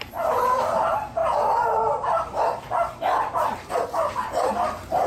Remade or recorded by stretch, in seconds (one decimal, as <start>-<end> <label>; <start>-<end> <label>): 0.0-5.1 remade